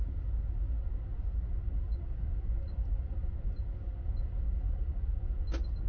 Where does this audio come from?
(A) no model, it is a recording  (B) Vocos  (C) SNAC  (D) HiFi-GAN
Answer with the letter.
A